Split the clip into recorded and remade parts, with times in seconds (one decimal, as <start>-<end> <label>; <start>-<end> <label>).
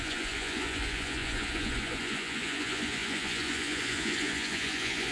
0.0-5.1 remade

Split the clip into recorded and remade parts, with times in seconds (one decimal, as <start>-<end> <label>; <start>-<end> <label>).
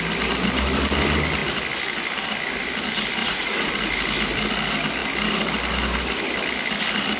0.0-3.2 recorded; 3.2-3.7 remade; 3.7-7.2 recorded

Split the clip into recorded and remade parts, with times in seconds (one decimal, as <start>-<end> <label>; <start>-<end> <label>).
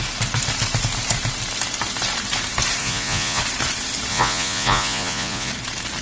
0.0-2.8 recorded; 2.8-3.4 remade; 3.4-4.1 recorded; 4.1-5.5 remade; 5.5-6.0 recorded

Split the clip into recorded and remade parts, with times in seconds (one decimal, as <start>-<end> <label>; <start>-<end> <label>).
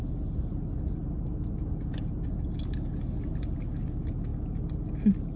0.0-5.4 recorded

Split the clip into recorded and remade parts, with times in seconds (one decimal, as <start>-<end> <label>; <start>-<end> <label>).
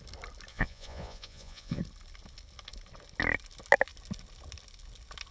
0.0-0.5 recorded; 0.5-1.8 remade; 1.8-5.3 recorded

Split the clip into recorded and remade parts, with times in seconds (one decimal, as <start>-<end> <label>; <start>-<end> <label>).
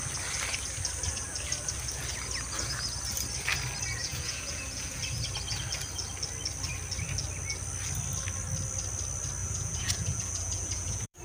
0.0-4.0 recorded; 4.0-5.0 remade; 5.0-9.4 recorded; 9.4-11.2 remade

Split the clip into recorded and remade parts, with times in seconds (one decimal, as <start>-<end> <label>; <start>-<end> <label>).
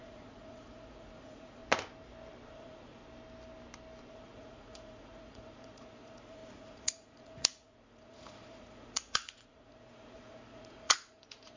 0.0-1.6 remade; 1.6-2.5 recorded; 2.5-3.0 remade; 3.0-4.1 recorded; 4.1-11.6 remade